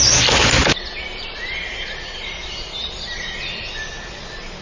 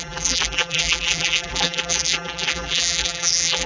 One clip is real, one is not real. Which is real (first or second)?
first